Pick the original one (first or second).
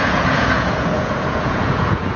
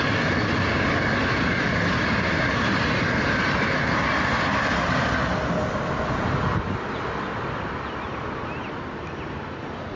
second